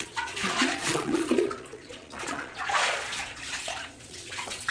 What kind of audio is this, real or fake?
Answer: fake